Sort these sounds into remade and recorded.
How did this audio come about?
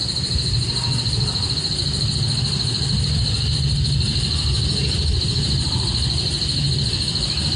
recorded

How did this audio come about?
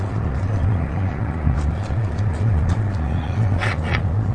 remade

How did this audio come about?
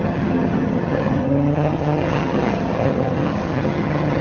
remade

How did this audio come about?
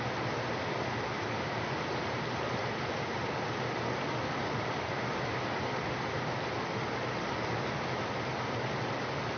recorded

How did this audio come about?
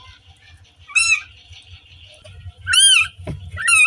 recorded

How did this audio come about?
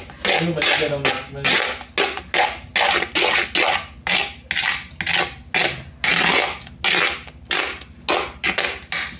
recorded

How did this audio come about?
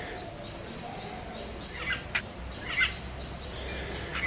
recorded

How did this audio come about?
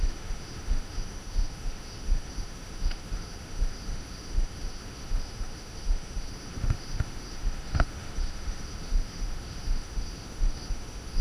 remade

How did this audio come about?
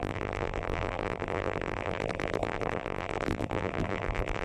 remade